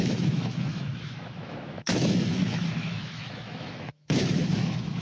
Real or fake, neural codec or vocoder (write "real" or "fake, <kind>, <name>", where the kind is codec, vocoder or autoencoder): fake, autoencoder, DAC-VAE